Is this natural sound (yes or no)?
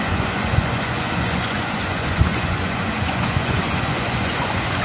no